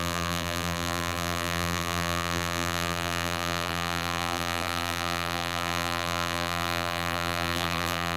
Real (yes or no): no